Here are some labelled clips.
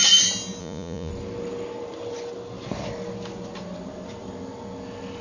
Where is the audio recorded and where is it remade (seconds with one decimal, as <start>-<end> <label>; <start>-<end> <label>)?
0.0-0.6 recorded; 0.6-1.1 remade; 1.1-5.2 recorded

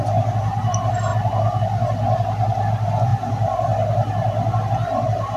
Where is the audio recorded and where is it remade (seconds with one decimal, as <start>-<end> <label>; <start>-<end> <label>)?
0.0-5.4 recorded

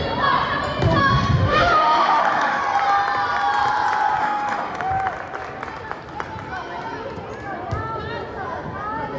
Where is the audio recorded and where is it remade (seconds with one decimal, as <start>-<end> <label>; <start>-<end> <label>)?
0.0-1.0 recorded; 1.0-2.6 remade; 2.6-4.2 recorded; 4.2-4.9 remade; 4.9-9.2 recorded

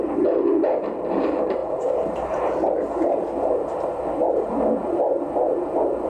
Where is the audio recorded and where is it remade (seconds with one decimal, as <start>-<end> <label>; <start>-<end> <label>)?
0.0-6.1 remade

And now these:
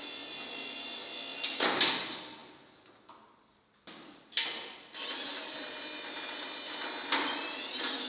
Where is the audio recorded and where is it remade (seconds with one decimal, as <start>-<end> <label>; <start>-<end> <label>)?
0.0-8.1 recorded

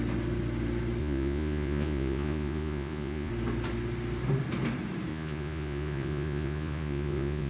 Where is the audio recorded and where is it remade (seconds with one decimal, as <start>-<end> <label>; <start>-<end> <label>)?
0.0-1.0 recorded; 1.0-3.3 remade; 3.3-5.1 recorded; 5.1-7.5 remade

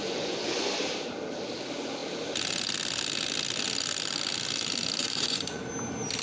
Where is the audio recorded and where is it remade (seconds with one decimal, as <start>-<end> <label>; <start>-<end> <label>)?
0.0-0.8 remade; 0.8-5.0 recorded; 5.0-5.7 remade; 5.7-6.2 recorded